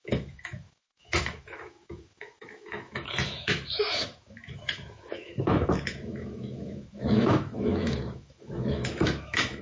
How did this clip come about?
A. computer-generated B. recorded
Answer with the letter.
A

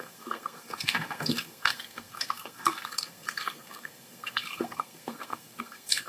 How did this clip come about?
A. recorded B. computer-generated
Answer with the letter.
B